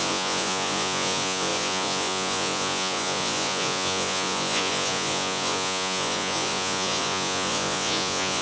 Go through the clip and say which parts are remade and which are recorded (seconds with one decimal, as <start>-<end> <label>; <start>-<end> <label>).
0.0-8.4 remade